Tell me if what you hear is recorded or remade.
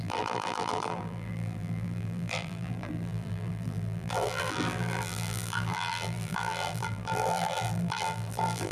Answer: remade